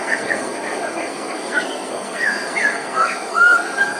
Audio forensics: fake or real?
fake